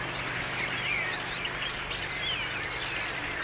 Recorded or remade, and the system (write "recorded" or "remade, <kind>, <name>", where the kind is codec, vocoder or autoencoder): recorded